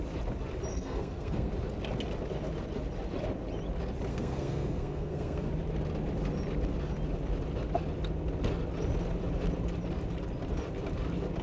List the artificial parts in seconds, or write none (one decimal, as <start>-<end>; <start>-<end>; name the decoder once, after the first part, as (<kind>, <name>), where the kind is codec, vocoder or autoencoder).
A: 0.7-1.5 (codec, SNAC); 4.1-5.5